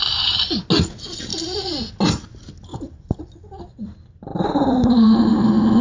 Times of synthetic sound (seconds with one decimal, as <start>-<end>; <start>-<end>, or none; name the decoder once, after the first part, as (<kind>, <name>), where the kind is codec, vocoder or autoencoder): 1.3-1.8 (vocoder, BigVGAN v2); 2.7-3.2; 4.3-5.3